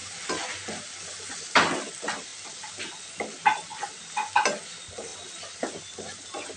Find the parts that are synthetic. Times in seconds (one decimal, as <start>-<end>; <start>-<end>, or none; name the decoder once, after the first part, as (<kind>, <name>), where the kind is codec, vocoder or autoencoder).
none